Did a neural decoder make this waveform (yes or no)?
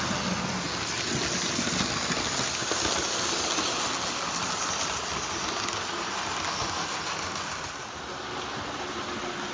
no